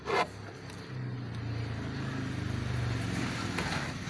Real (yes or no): yes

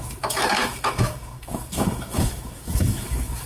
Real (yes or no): no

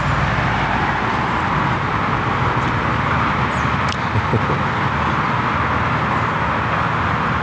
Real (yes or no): yes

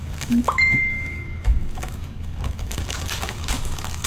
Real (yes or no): no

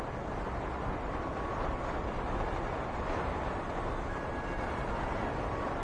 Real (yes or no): yes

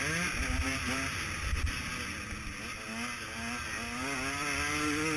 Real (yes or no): yes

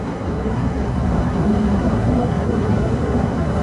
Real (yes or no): no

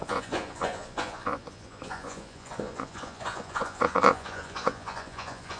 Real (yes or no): no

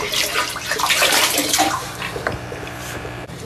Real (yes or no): no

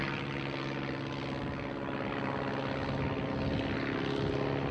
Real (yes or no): yes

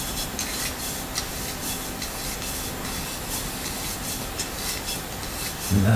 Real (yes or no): yes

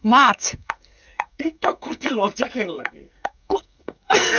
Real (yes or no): no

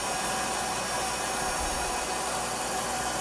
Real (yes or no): yes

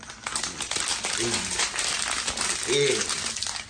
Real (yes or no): yes